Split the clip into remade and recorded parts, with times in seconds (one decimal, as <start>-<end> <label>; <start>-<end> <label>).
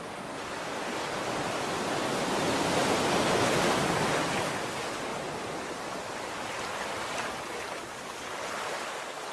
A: 0.0-0.7 recorded; 0.7-2.8 remade; 2.8-5.1 recorded; 5.1-7.6 remade; 7.6-9.3 recorded